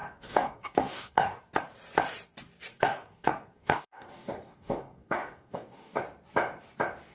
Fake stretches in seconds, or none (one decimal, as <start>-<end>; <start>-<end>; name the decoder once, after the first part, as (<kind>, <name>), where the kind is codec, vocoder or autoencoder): 0.0-1.4 (codec, DAC); 2.7-6.0